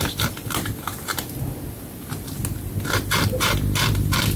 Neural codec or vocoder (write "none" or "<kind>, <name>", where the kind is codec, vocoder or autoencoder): none